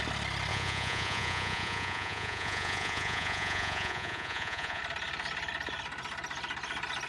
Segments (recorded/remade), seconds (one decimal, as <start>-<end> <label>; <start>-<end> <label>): 0.0-0.5 recorded; 0.5-4.8 remade; 4.8-7.1 recorded